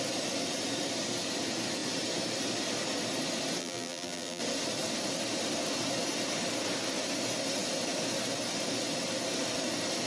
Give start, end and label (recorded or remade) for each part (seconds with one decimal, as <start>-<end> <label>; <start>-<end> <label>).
0.0-3.6 recorded; 3.6-4.4 remade; 4.4-10.1 recorded